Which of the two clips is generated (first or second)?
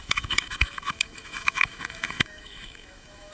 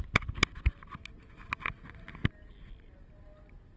first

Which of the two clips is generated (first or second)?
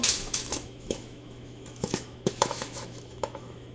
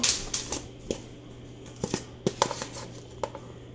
first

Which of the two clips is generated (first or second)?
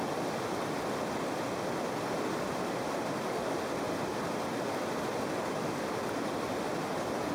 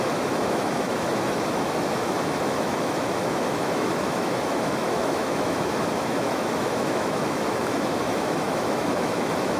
second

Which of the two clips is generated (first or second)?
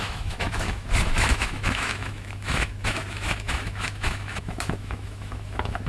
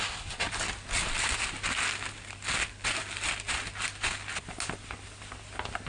first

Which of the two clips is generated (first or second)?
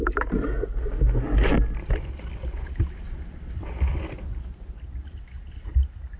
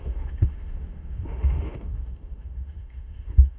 second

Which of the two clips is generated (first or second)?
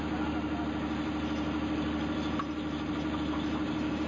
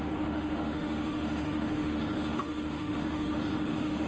second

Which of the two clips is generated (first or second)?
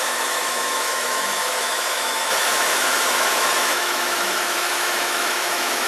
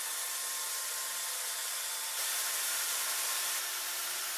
first